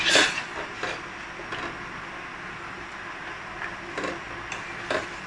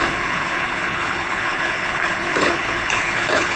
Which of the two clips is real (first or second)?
first